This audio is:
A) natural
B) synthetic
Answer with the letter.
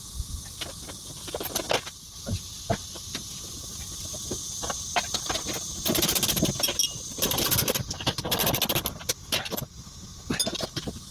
A